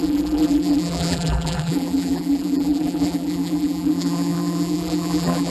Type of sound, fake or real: fake